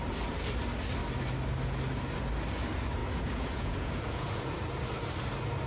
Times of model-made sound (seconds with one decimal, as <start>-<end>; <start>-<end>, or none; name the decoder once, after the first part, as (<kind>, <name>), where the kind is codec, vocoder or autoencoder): 3.0-4.6 (vocoder, Vocos)